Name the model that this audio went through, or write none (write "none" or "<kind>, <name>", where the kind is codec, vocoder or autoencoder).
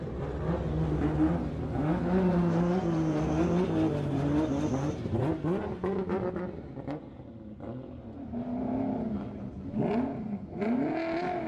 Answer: none